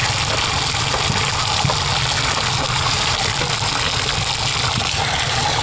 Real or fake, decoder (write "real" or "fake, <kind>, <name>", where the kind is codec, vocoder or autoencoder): real